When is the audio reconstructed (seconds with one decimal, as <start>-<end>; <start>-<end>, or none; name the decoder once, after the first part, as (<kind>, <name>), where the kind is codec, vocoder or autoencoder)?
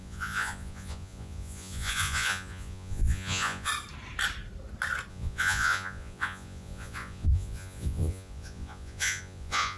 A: 0.0-3.7 (vocoder, Vocos); 5.1-9.8